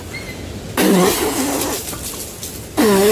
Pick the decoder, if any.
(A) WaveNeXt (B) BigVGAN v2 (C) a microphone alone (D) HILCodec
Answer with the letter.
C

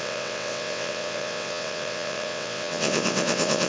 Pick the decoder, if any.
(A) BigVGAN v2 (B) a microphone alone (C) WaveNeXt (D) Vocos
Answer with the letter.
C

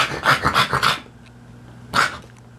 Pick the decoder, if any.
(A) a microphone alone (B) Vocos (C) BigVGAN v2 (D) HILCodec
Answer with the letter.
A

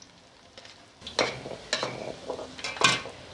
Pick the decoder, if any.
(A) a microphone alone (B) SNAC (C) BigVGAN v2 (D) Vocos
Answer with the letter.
A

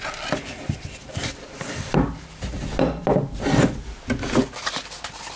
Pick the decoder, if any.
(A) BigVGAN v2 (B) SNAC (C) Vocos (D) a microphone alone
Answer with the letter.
D